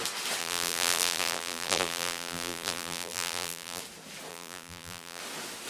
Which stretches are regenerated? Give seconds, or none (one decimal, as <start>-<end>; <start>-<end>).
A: 0.4-3.8; 4.3-5.2